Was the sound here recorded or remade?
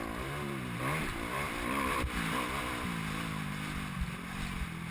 recorded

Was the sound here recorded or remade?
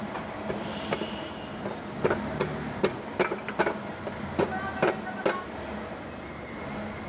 recorded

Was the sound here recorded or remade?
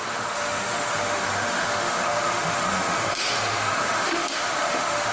remade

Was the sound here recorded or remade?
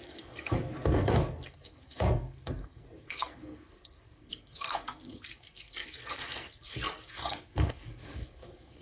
remade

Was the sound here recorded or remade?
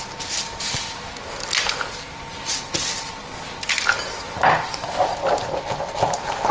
recorded